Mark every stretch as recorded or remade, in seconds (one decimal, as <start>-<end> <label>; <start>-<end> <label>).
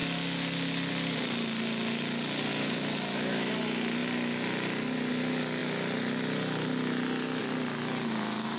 0.0-2.5 recorded; 2.5-3.5 remade; 3.5-8.6 recorded